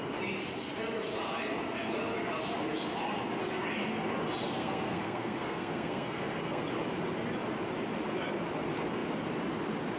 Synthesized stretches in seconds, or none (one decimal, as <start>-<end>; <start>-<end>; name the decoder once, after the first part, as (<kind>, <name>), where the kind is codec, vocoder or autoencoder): 4.6-6.6 (codec, SNAC)